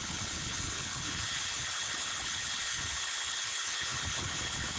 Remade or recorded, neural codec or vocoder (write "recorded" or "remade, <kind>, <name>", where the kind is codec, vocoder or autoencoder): remade, codec, HILCodec